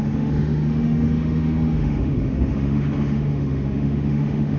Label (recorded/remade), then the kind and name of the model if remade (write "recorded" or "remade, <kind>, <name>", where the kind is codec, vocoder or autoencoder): remade, autoencoder, DAC-VAE